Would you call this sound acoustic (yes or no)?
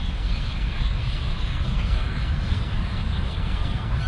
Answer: no